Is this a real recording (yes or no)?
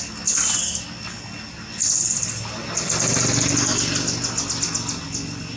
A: yes